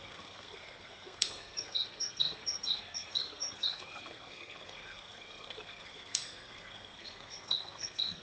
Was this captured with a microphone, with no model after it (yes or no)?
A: no